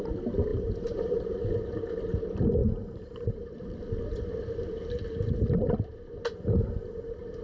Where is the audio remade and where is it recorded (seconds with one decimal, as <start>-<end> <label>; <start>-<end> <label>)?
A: 0.0-0.5 recorded; 0.5-1.7 remade; 1.7-2.6 recorded; 2.6-3.8 remade; 3.8-7.4 recorded